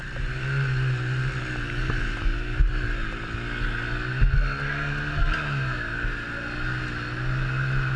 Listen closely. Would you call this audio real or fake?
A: real